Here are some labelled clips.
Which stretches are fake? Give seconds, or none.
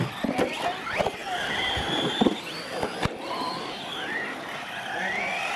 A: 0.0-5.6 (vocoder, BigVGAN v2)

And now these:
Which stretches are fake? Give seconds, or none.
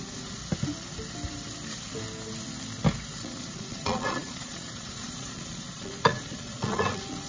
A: 0.0-0.4 (vocoder, Vocos); 3.2-7.3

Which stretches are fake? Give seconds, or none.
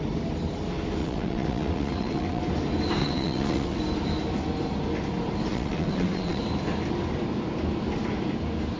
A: 1.0-2.4 (vocoder, WaveNeXt); 3.0-3.8; 5.5-6.4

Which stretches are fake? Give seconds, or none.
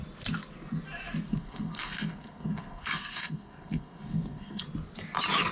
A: 1.3-4.6 (codec, SNAC)